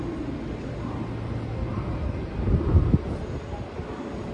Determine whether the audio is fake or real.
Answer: real